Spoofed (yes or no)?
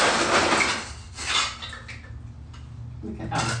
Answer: no